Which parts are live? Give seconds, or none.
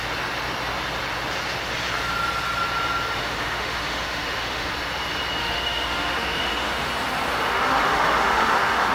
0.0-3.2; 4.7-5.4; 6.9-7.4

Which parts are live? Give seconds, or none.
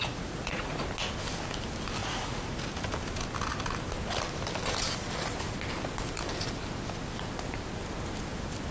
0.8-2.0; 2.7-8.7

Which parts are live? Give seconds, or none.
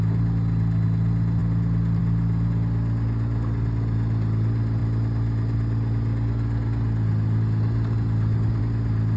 0.0-9.2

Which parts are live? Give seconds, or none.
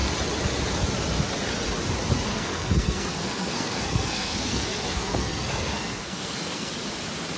0.0-2.3; 6.7-7.4